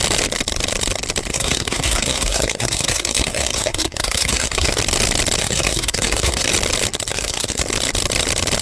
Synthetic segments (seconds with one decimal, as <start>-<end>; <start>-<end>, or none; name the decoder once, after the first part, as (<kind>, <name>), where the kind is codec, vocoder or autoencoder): 1.3-4.7 (codec, SNAC); 5.4-6.5; 7.1-7.6